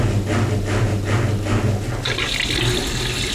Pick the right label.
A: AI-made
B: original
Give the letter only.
B